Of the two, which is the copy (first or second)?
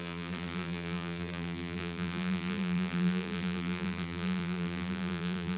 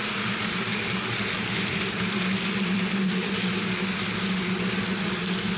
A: first